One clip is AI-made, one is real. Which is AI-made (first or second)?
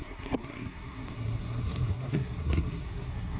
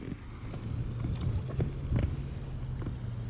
first